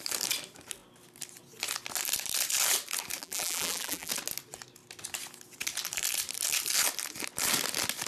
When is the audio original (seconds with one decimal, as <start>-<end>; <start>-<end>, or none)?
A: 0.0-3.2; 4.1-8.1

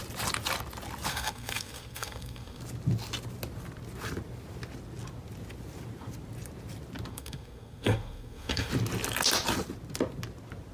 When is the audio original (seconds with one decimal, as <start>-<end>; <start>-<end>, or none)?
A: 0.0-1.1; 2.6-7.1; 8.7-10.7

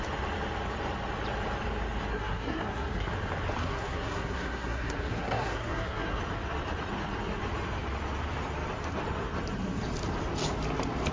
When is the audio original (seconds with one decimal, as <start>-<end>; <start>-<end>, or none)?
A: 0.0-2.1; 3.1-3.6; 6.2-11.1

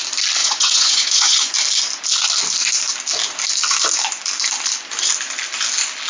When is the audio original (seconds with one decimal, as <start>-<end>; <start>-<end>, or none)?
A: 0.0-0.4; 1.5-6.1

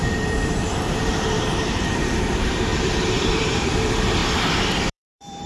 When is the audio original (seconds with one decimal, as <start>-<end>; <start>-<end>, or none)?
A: 2.7-3.2; 4.2-4.9

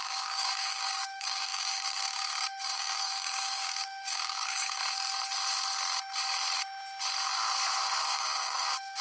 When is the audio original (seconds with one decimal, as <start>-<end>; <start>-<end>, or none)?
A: 4.8-8.0

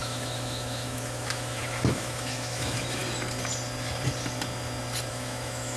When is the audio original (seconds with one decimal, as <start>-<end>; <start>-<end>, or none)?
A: 3.0-5.1